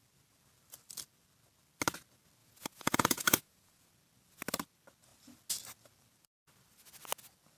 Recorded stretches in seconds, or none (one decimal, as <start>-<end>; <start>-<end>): 0.0-2.4; 3.9-7.6